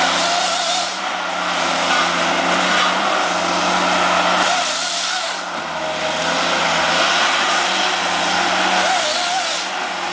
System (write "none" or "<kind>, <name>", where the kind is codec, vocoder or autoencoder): none